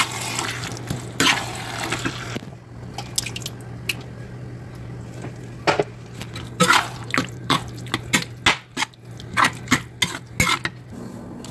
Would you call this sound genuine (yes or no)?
yes